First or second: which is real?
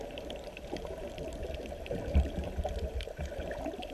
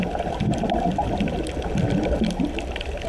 second